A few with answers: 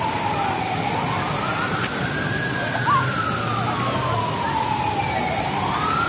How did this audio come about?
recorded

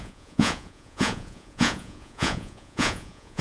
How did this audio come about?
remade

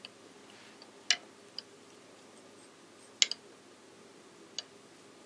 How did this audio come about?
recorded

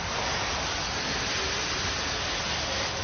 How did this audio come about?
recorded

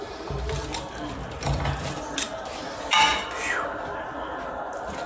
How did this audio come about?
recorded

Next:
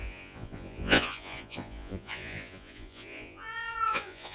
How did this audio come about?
remade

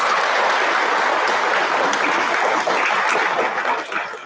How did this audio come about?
recorded